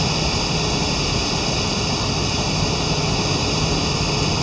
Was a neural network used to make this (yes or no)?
no